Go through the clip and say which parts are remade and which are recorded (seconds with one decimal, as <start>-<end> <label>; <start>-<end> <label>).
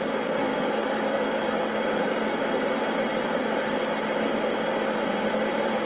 0.0-0.5 recorded; 0.5-2.2 remade; 2.2-5.9 recorded